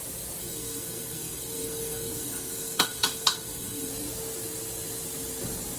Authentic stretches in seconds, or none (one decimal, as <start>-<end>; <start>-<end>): 0.0-0.4; 3.9-5.8